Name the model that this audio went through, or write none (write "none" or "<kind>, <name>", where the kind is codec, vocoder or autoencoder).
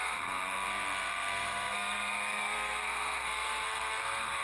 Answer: codec, SNAC